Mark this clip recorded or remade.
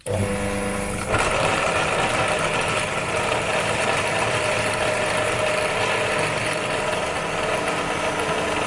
recorded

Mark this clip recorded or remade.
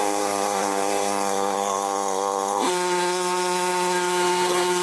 remade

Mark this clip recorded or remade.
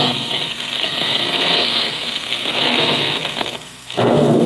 remade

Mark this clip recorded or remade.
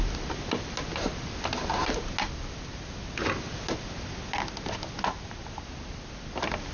recorded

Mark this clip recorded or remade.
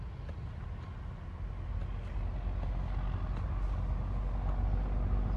recorded